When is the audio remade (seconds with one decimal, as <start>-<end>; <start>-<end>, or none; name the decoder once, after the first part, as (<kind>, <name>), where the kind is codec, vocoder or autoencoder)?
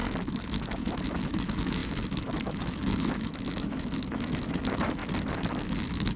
0.0-5.0 (autoencoder, DAC-VAE); 5.5-6.2